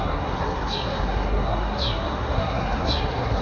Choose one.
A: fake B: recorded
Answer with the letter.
A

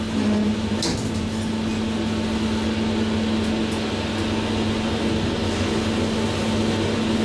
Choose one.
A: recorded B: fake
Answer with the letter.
A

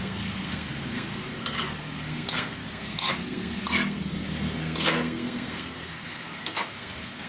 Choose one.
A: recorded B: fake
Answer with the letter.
B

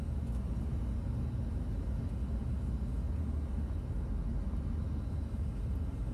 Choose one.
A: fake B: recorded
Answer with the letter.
B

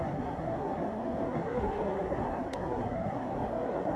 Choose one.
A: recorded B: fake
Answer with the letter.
B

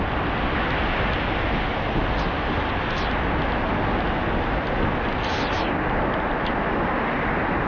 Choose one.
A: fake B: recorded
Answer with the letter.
B